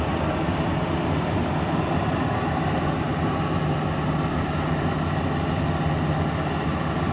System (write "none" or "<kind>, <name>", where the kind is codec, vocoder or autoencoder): none